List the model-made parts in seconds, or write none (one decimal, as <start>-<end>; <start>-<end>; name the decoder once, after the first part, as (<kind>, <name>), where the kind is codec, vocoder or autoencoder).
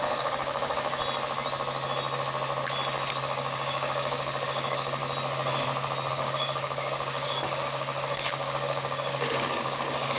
0.0-1.0 (codec, DAC); 3.2-5.0; 6.1-10.2